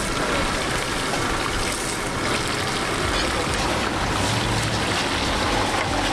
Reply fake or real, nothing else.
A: real